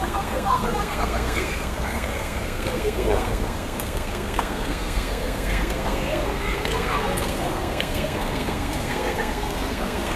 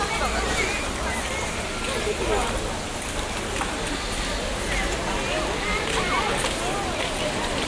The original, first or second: second